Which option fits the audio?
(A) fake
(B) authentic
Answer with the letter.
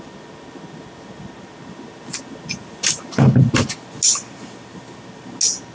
B